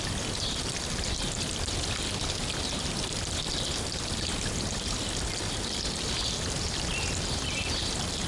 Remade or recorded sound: remade